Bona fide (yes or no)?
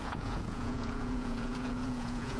no